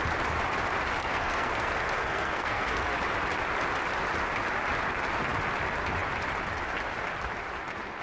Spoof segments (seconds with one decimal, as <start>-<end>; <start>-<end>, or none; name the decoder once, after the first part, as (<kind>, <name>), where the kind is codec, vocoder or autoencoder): 1.0-3.0 (codec, SNAC)